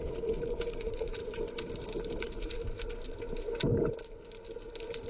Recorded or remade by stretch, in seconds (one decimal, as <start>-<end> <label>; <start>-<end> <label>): 0.0-1.2 remade; 1.2-2.2 recorded; 2.2-2.6 remade; 2.6-5.1 recorded